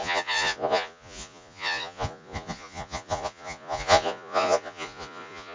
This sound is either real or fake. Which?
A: fake